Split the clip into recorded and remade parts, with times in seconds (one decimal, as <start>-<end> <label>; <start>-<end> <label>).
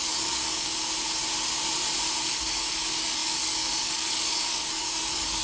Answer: 0.0-0.7 remade; 0.7-2.3 recorded; 2.3-5.4 remade